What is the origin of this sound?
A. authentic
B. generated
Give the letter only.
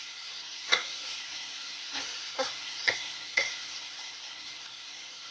B